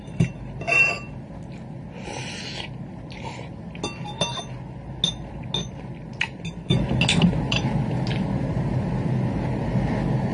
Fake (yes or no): no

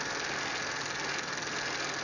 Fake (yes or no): no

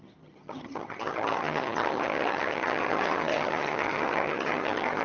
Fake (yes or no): yes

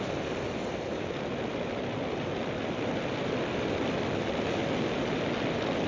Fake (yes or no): no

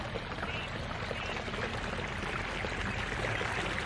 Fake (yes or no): no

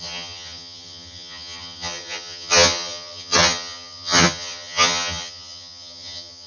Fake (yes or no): yes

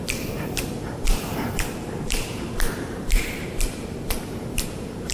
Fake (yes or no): yes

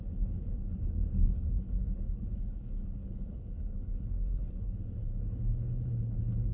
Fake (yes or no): yes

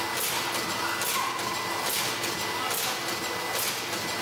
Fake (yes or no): no